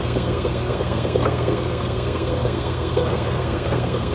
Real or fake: fake